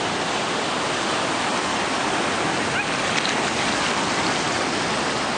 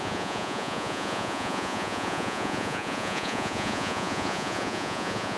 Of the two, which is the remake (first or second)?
second